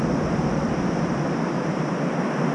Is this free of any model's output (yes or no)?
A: yes